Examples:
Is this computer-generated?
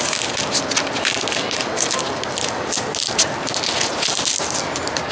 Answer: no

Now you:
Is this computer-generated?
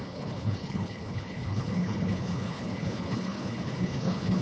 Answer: yes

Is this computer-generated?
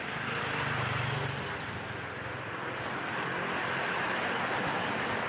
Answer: no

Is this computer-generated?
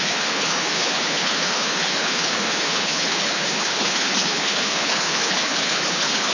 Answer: yes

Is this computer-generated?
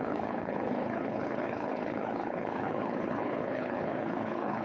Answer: yes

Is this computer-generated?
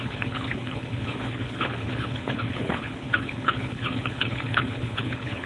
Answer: yes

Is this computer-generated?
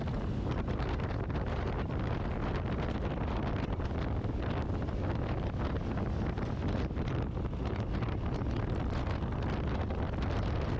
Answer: no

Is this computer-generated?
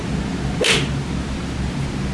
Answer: no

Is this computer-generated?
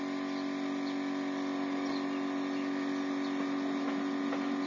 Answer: no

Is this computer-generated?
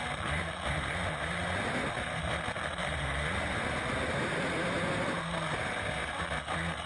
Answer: no